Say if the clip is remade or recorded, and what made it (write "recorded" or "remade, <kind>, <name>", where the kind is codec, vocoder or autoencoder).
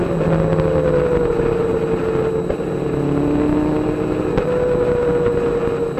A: recorded